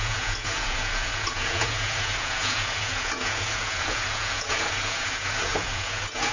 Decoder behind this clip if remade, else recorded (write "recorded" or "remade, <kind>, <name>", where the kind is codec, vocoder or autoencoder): remade, vocoder, Vocos